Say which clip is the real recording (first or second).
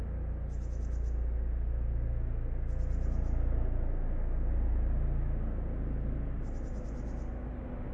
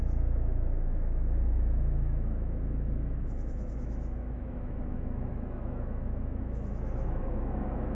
first